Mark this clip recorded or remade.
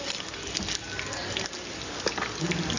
recorded